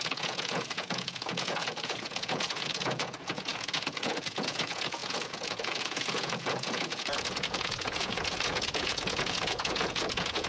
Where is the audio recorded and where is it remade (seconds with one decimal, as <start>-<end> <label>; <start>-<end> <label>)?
0.0-10.5 remade